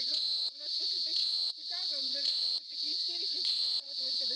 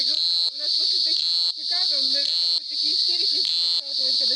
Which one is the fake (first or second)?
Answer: first